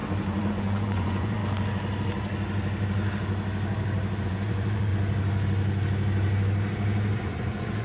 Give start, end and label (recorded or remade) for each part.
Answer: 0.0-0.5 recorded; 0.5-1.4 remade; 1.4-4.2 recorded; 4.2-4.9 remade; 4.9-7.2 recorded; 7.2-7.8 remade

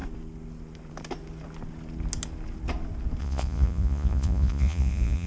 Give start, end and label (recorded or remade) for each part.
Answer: 0.0-3.2 recorded; 3.2-5.3 remade

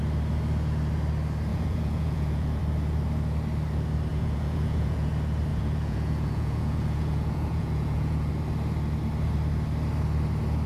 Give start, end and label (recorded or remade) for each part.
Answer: 0.0-1.5 recorded; 1.5-2.6 remade; 2.6-4.1 recorded; 4.1-5.1 remade; 5.1-5.5 recorded; 5.5-8.3 remade; 8.3-10.7 recorded

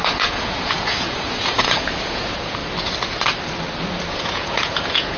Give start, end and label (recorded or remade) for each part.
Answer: 0.0-2.6 remade; 2.6-4.1 recorded; 4.1-5.2 remade

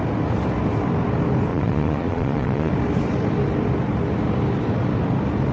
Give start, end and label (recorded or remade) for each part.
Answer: 0.0-1.5 recorded; 1.5-2.7 remade; 2.7-5.5 recorded

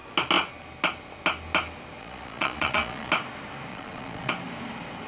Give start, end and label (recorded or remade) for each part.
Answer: 0.0-2.0 recorded; 2.0-3.1 remade; 3.1-3.7 recorded; 3.7-4.3 remade; 4.3-5.1 recorded